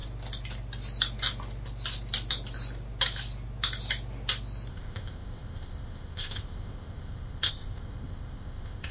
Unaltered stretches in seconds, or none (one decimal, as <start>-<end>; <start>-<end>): 0.0-4.7